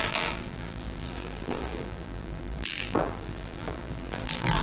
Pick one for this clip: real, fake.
fake